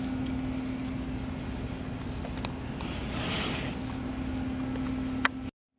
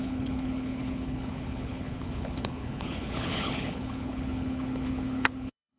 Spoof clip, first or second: second